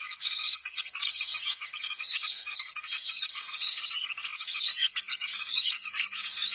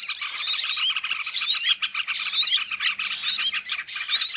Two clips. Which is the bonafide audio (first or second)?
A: second